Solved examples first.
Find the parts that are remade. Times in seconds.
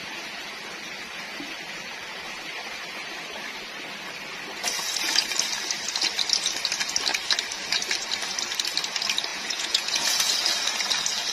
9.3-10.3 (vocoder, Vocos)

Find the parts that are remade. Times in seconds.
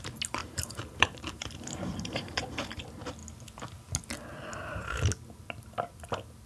0.4-2.8 (vocoder, BigVGAN v2)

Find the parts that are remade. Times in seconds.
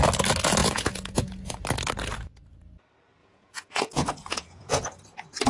0.6-1.6 (vocoder, Vocos); 3.2-4.8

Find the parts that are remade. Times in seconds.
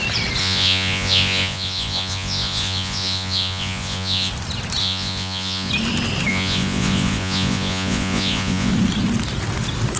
0.4-4.3 (vocoder, Vocos); 4.8-5.7; 6.3-8.7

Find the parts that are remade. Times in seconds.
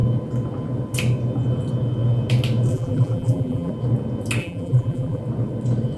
2.7-3.7 (vocoder, BigVGAN v2); 4.4-5.2